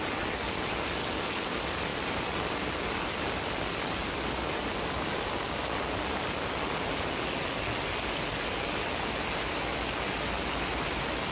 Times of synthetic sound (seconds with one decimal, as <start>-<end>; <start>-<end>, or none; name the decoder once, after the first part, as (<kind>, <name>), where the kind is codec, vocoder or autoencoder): none